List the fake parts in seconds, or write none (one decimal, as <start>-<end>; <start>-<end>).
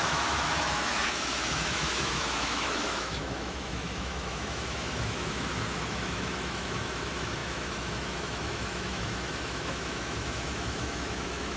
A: 0.0-11.6